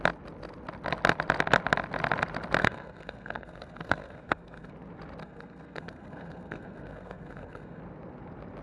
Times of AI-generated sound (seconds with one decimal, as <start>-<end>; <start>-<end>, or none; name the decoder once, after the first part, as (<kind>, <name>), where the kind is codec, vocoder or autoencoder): 2.6-4.7 (codec, SNAC); 5.2-7.8